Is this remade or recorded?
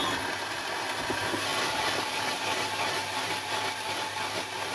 recorded